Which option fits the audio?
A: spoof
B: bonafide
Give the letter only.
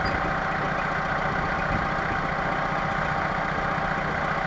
B